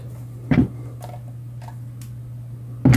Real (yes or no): yes